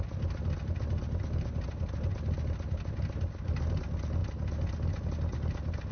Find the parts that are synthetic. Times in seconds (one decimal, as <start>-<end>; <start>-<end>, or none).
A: none